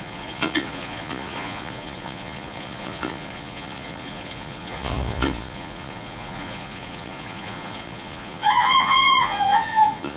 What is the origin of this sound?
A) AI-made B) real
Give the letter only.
A